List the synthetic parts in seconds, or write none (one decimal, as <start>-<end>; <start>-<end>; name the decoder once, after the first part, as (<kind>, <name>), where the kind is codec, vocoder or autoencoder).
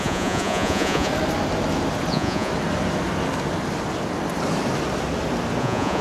0.0-1.1 (vocoder, Vocos); 2.1-2.5; 5.6-6.0